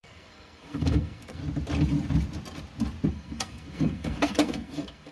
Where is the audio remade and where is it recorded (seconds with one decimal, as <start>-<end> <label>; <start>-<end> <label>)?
0.0-1.4 remade; 1.4-3.1 recorded; 3.1-5.1 remade